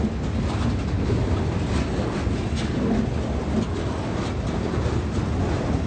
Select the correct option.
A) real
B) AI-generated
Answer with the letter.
A